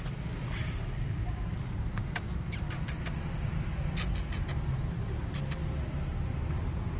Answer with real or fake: real